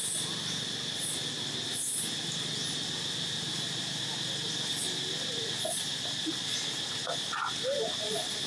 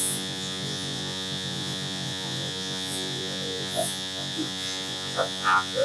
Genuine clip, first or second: first